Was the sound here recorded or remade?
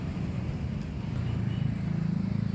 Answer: recorded